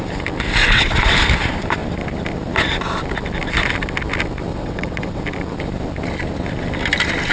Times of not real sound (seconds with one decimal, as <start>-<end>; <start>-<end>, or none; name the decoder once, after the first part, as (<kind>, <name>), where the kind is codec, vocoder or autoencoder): 0.6-1.1 (vocoder, WaveNeXt); 4.5-5.2